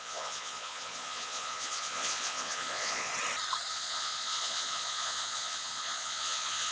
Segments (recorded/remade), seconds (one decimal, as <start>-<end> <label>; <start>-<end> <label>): 0.0-3.1 remade; 3.1-3.7 recorded; 3.7-6.7 remade